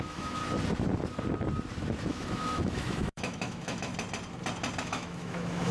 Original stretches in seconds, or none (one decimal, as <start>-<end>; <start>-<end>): 0.4-2.1; 3.9-4.8